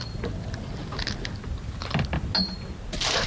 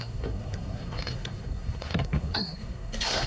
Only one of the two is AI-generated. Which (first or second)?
second